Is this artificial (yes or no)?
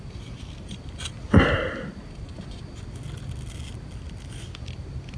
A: no